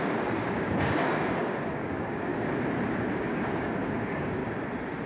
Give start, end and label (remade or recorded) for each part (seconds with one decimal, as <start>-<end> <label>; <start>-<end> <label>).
0.0-2.3 remade; 2.3-3.2 recorded; 3.2-4.4 remade; 4.4-5.1 recorded